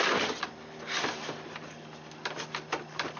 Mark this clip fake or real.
fake